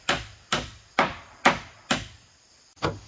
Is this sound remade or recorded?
remade